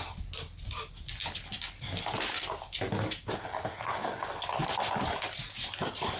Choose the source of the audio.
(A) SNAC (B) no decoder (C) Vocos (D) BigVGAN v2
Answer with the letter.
B